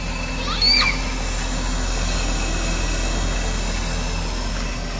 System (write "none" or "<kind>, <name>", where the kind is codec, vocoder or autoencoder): none